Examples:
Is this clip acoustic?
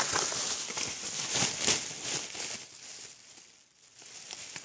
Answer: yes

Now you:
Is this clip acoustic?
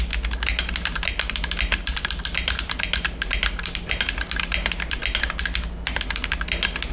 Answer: yes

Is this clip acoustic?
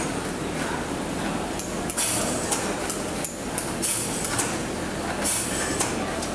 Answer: yes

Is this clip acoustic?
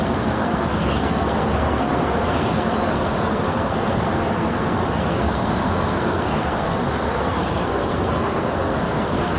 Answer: no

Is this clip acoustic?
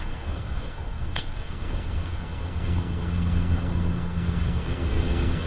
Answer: no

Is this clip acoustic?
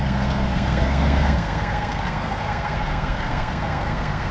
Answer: no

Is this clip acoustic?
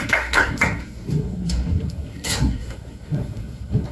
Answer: no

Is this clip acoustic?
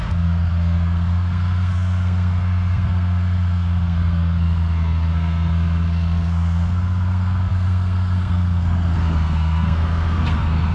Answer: no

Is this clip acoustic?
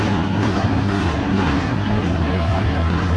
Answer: no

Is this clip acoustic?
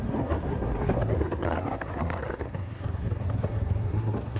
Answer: no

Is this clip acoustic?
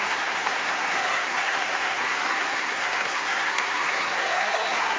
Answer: no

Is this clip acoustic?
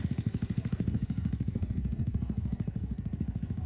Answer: no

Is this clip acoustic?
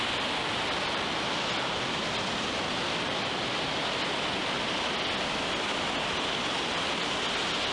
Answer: yes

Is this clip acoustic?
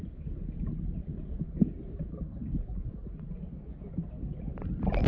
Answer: yes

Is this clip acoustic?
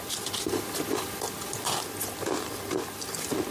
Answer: yes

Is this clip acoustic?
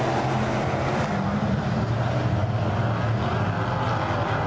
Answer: yes